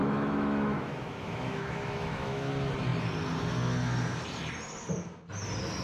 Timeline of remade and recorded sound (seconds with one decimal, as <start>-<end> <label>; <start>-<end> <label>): 0.0-2.5 remade; 2.5-5.8 recorded

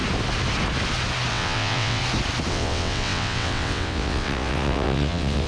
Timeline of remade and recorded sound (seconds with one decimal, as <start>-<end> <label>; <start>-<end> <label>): 0.0-1.3 recorded; 1.3-2.0 remade; 2.0-2.5 recorded; 2.5-5.5 remade

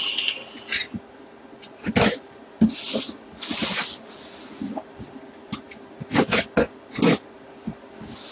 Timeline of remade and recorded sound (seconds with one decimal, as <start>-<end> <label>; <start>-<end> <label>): 0.0-8.3 recorded

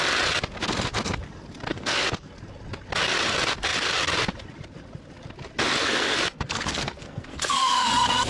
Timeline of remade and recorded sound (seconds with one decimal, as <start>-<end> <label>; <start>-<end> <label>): 0.0-1.7 recorded; 1.7-2.3 remade; 2.3-5.8 recorded; 5.8-7.9 remade; 7.9-8.3 recorded

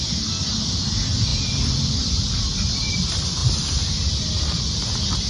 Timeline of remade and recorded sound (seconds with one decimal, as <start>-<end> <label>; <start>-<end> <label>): 0.0-1.3 recorded; 1.3-3.0 remade; 3.0-5.3 recorded

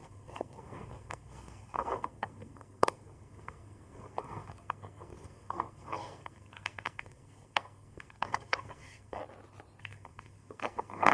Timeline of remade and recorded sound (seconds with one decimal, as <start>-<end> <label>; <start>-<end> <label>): 0.0-9.2 remade; 9.2-9.8 recorded; 9.8-11.1 remade

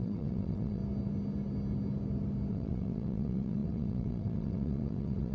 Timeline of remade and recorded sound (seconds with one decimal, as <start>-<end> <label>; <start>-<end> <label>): 0.0-0.8 remade; 0.8-2.5 recorded; 2.5-5.3 remade